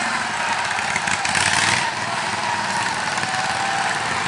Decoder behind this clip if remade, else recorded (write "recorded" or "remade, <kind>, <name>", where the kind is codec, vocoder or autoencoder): recorded